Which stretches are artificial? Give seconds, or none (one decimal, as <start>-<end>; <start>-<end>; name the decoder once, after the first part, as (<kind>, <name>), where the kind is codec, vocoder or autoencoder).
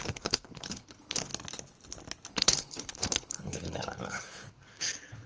0.0-1.3 (codec, HILCodec); 2.3-5.3